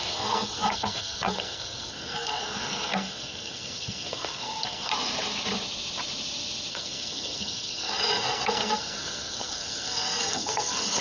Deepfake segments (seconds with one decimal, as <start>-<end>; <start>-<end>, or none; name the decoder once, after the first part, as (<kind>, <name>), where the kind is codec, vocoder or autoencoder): 0.0-4.9 (codec, SNAC); 6.7-11.0